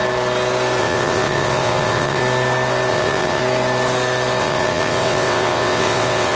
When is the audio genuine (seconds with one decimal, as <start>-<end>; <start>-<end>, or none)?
0.0-0.8; 2.2-2.9; 3.4-4.4